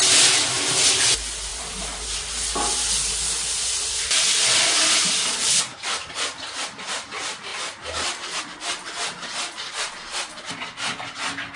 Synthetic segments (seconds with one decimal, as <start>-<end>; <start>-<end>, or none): 1.5-2.5